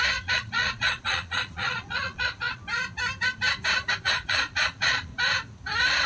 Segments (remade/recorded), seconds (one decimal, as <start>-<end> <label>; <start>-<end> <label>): 0.0-2.6 remade; 2.6-4.0 recorded; 4.0-5.1 remade; 5.1-6.1 recorded